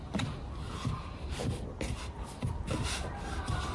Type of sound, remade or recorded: recorded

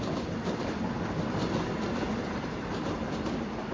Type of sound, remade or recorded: recorded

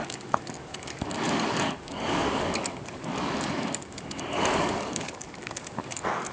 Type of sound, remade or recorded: remade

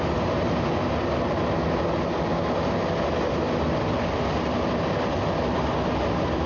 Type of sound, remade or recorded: recorded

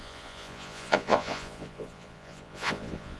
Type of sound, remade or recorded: remade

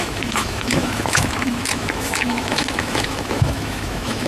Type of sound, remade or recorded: remade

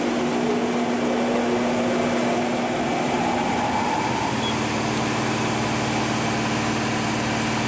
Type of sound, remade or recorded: recorded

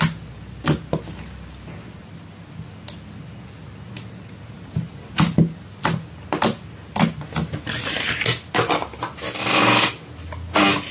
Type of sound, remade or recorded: recorded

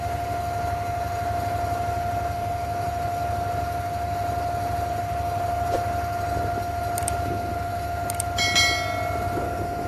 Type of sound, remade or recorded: recorded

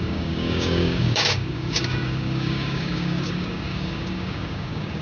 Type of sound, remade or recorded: remade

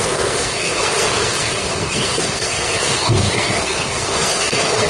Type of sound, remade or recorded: remade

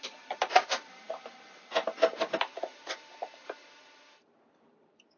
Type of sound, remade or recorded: remade